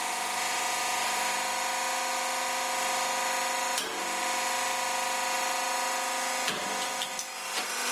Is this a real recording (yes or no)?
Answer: yes